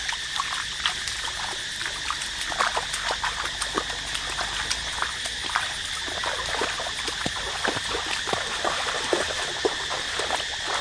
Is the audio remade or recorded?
recorded